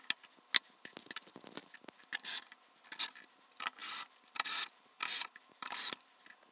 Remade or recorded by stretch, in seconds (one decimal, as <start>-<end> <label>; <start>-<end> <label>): 0.0-3.8 recorded; 3.8-5.9 remade; 5.9-6.5 recorded